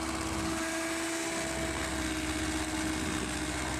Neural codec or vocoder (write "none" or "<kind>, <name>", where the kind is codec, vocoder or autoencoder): none